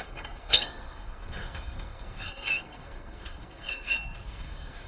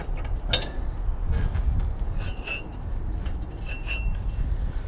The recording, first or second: second